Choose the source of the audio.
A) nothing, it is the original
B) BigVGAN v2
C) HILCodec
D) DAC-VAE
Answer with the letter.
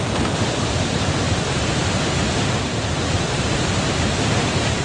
B